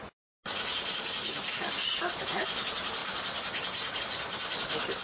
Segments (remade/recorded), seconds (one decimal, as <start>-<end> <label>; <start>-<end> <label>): 0.0-5.0 recorded